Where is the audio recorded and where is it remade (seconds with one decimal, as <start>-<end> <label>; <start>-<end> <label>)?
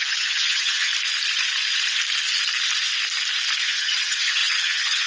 0.0-0.9 remade; 0.9-3.6 recorded; 3.6-5.1 remade